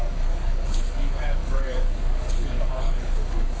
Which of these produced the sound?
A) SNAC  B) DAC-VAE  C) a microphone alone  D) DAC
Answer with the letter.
D